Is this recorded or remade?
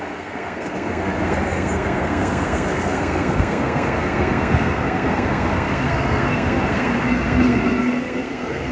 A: remade